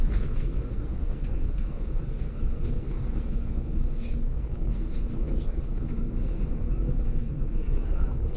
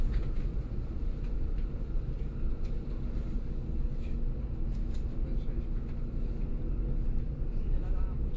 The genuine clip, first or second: second